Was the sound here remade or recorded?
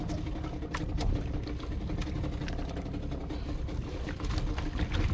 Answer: recorded